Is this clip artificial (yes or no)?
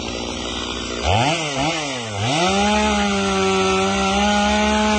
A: no